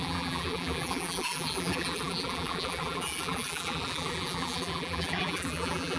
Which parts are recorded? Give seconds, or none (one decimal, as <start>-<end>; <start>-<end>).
none